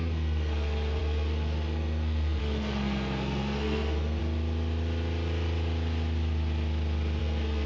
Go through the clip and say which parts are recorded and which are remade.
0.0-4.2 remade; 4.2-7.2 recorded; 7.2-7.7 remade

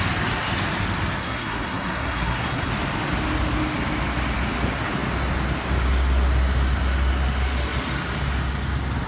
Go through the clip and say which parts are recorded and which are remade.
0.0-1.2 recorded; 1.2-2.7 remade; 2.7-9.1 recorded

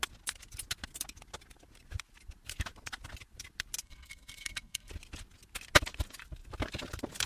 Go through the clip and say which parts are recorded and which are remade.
0.0-3.8 recorded; 3.8-4.9 remade; 4.9-7.3 recorded

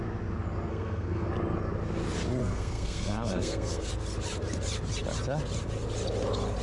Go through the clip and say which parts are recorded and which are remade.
0.0-0.7 recorded; 0.7-1.3 remade; 1.3-2.4 recorded; 2.4-3.9 remade; 3.9-6.6 recorded